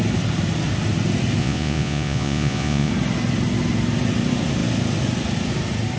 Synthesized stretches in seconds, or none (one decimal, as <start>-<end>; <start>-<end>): 1.4-2.9